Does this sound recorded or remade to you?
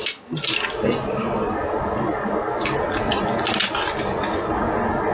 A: recorded